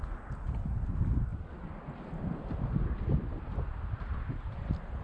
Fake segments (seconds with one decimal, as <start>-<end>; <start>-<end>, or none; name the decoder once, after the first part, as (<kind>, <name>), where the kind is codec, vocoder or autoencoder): none